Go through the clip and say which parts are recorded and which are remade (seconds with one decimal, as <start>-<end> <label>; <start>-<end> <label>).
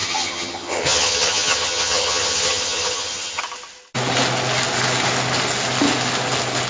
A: 0.0-3.4 remade; 3.4-6.7 recorded